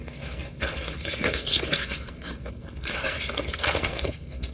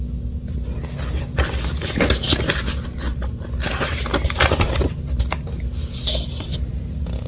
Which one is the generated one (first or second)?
first